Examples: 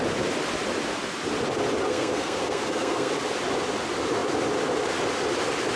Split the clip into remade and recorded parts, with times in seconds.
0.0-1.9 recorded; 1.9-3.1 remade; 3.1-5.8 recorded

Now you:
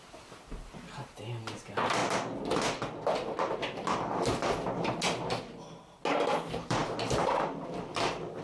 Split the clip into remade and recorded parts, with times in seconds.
0.0-8.4 recorded

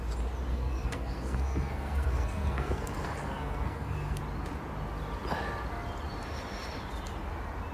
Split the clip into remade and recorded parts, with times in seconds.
0.0-0.5 recorded; 0.5-4.2 remade; 4.2-7.7 recorded